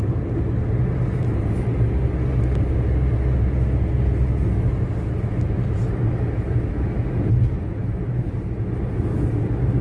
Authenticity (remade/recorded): recorded